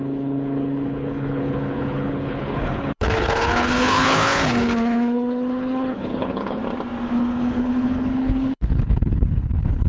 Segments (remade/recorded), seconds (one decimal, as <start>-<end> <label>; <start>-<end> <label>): 0.0-6.6 remade; 6.6-7.1 recorded; 7.1-9.9 remade